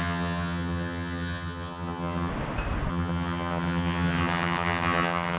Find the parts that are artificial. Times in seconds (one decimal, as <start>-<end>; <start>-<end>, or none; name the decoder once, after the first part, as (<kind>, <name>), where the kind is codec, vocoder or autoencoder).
0.0-2.3 (vocoder, HiFi-GAN); 2.9-5.4